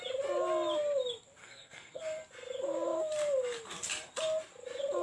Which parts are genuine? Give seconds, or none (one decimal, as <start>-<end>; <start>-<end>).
0.0-1.4; 2.0-5.0